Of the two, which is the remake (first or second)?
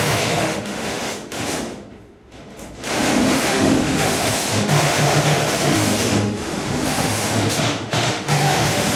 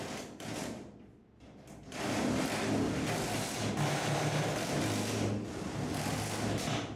first